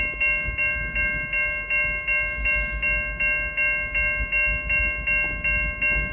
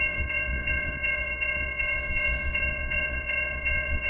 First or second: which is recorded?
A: first